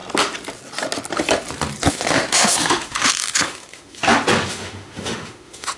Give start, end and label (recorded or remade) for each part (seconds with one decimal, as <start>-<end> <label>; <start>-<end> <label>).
0.0-1.9 recorded; 1.9-4.0 remade; 4.0-4.5 recorded; 4.5-5.8 remade